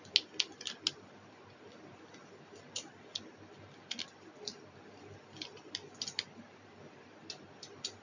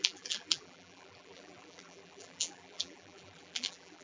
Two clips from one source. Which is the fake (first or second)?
second